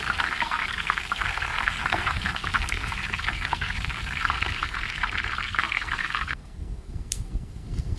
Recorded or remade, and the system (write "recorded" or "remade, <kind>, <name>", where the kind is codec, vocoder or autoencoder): remade, codec, SNAC